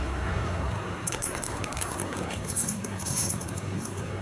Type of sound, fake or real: fake